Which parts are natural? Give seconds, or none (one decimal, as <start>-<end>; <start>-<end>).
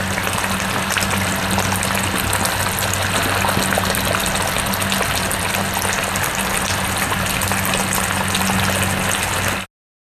0.0-10.1